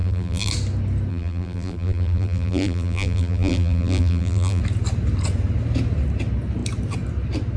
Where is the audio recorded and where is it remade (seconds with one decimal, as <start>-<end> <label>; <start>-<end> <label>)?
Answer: 0.0-0.5 remade; 0.5-1.1 recorded; 1.1-4.6 remade; 4.6-7.6 recorded